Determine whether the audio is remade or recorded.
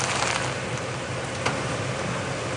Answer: recorded